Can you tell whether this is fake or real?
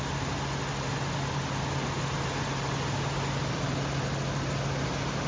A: real